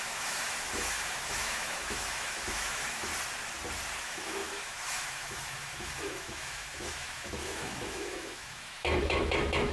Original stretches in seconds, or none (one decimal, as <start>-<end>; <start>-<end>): 3.1-4.0